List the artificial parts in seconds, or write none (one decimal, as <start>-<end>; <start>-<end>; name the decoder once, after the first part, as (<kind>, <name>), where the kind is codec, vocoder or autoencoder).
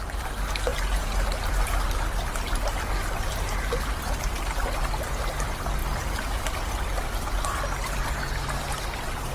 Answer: none